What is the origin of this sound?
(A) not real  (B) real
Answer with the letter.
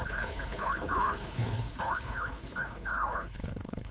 A